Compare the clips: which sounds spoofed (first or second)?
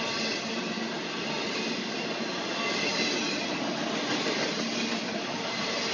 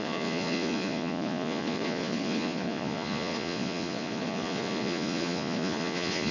second